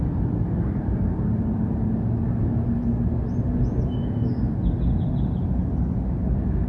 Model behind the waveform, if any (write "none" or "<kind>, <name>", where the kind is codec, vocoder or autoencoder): none